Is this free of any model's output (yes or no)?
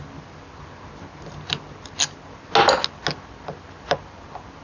yes